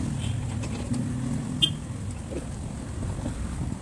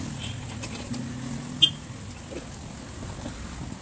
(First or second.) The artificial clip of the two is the first